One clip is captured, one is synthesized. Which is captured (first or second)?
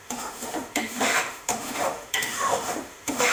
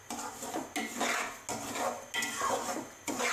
second